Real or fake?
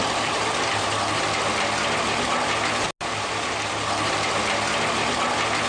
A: real